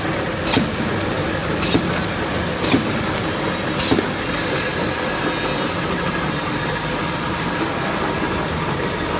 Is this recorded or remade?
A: recorded